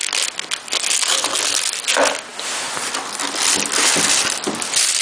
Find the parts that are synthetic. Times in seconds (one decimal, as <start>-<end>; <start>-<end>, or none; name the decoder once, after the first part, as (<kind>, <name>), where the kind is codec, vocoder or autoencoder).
2.3-3.8 (vocoder, BigVGAN v2)